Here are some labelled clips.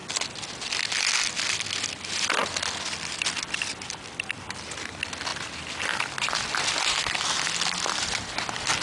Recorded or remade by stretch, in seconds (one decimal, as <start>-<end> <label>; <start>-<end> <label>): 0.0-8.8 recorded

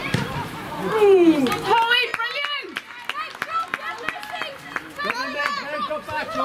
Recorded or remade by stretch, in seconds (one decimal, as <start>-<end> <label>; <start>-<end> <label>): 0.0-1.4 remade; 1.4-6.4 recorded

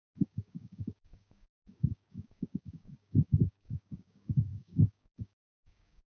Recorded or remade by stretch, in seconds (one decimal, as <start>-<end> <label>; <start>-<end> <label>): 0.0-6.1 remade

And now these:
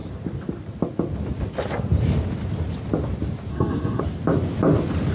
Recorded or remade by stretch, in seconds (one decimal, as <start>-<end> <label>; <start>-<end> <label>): 0.0-3.5 recorded; 3.5-4.0 remade; 4.0-5.1 recorded